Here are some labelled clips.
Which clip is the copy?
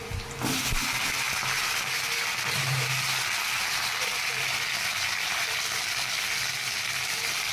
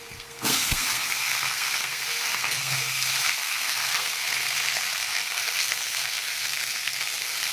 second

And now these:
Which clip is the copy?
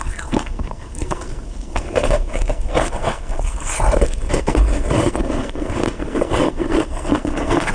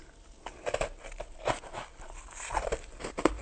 first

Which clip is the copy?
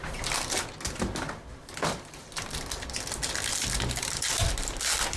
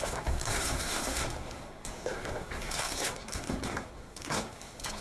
second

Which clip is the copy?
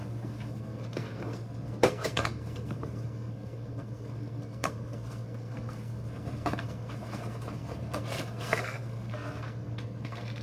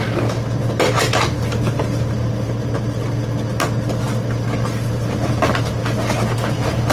first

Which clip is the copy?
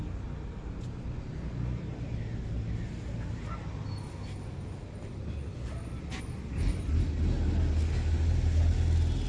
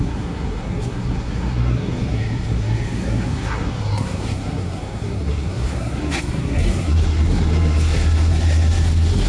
second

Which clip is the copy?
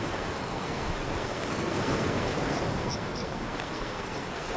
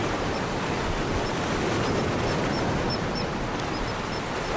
first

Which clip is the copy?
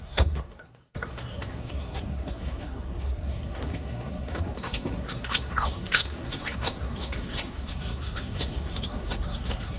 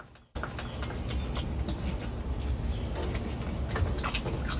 first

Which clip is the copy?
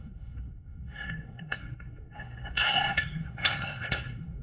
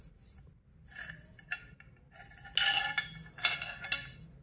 first